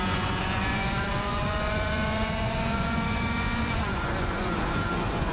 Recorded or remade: remade